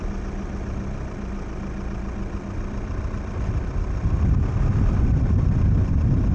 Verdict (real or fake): real